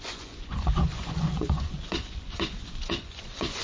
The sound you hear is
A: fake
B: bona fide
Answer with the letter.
A